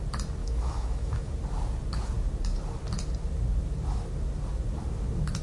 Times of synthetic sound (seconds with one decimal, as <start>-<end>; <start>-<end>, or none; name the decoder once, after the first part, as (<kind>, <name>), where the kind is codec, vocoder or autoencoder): 0.4-1.3 (autoencoder, DAC-VAE)